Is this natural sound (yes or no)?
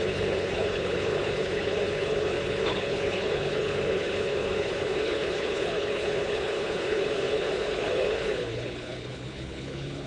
no